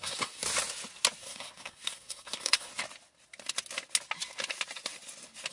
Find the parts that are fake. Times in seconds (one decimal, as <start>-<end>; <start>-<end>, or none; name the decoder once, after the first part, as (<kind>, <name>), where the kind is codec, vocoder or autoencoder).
0.0-0.4 (codec, SNAC); 1.2-2.7